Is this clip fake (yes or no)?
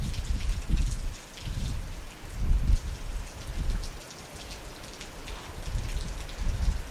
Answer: no